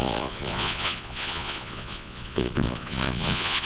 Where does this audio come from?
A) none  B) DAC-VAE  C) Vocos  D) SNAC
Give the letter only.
C